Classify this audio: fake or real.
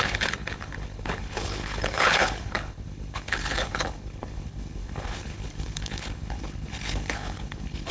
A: fake